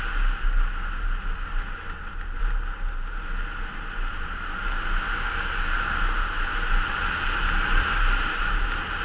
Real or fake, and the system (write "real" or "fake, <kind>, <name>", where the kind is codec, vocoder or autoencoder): real